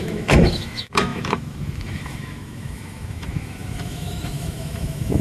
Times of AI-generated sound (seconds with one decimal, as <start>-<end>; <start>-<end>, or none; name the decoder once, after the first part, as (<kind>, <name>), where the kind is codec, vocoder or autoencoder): 0.0-5.2 (autoencoder, DAC-VAE)